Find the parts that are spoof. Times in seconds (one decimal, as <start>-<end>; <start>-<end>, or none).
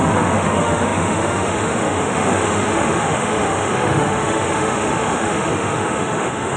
0.0-6.6